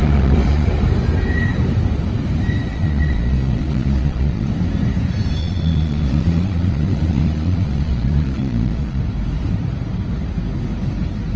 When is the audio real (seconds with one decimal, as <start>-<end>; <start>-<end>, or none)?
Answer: 0.7-2.7; 4.5-5.4; 9.0-11.4